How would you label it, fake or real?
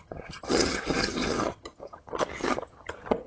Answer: fake